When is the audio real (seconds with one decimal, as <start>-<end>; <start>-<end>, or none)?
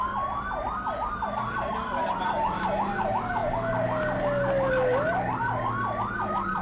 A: 0.0-6.6